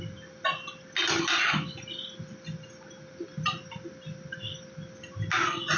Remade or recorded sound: recorded